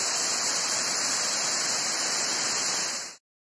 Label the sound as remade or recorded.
recorded